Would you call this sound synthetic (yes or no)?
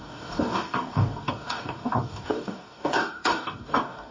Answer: yes